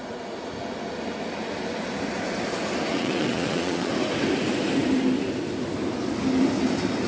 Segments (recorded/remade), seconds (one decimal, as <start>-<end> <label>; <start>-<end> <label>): 0.0-2.9 recorded; 2.9-3.9 remade; 3.9-7.1 recorded